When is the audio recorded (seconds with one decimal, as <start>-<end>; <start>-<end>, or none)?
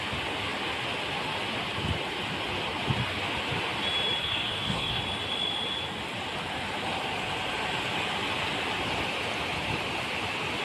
0.0-4.2; 5.0-10.6